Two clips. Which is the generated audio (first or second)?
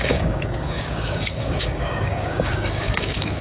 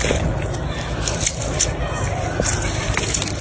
first